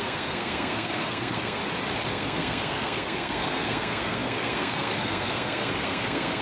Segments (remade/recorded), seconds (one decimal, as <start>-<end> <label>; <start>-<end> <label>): 0.0-1.6 remade; 1.6-2.1 recorded; 2.1-6.4 remade